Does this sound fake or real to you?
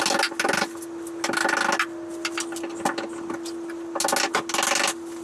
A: real